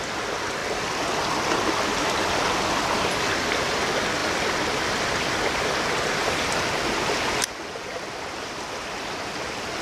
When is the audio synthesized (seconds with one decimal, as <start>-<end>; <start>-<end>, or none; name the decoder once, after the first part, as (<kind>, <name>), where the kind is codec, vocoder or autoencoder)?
7.9-8.5 (vocoder, BigVGAN v2)